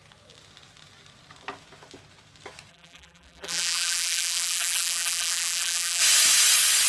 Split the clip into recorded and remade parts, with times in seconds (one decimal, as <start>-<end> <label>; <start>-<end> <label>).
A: 0.0-2.7 recorded; 2.7-6.0 remade; 6.0-6.9 recorded